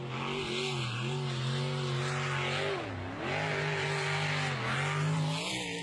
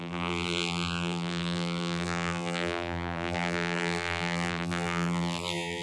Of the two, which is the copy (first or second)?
second